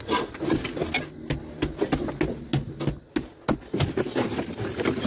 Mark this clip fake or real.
real